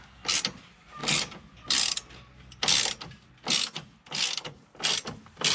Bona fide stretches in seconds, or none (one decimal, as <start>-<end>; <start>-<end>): 0.0-5.5